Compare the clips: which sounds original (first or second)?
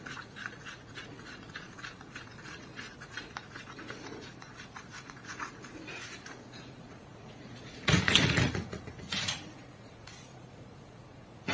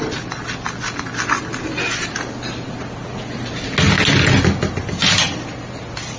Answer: second